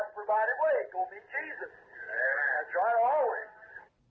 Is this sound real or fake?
real